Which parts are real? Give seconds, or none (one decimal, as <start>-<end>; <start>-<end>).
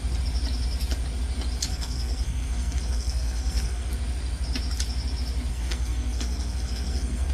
0.0-1.7; 3.9-5.5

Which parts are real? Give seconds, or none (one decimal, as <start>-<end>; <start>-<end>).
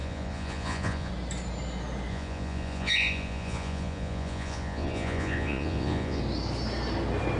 1.1-2.1; 6.2-7.4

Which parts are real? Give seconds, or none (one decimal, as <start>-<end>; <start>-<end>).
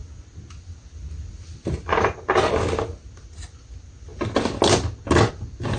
0.0-5.8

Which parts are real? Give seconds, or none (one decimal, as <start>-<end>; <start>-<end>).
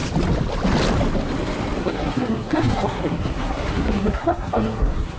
0.0-1.8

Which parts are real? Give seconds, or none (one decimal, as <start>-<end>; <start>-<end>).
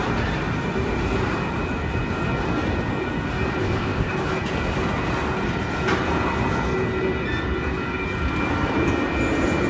0.0-3.6; 4.1-9.7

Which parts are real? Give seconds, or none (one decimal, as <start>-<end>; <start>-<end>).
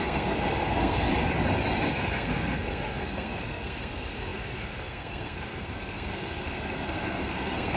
1.1-1.9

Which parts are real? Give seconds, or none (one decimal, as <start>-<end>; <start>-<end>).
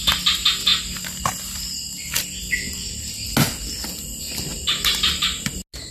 0.0-5.9